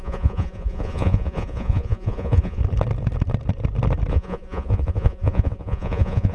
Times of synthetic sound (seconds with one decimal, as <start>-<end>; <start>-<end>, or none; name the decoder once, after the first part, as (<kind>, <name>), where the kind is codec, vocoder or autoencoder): 0.0-2.6 (vocoder, Vocos); 4.1-6.3